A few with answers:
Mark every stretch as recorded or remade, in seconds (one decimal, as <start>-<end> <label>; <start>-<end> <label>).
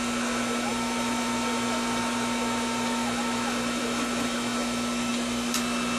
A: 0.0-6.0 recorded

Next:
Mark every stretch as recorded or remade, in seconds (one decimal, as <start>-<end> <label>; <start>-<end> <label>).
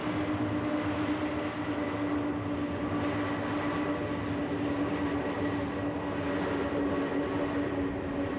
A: 0.0-8.4 recorded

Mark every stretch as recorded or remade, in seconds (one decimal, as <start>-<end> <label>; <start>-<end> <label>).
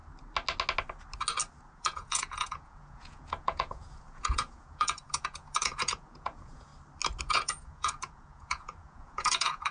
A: 0.0-1.6 recorded; 1.6-6.7 remade; 6.7-7.2 recorded; 7.2-9.7 remade